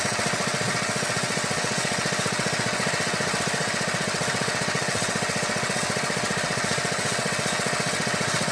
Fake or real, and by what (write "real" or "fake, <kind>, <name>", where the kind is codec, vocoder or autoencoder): fake, vocoder, WaveNeXt